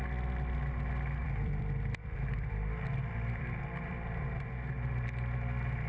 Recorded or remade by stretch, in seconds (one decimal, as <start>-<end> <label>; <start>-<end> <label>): 0.0-1.2 recorded; 1.2-4.4 remade; 4.4-5.9 recorded